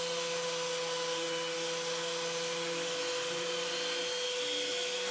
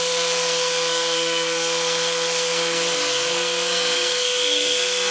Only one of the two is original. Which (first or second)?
first